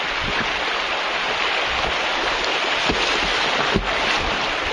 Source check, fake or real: real